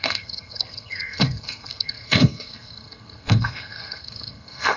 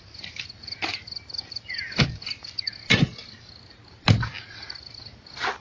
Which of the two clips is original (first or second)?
second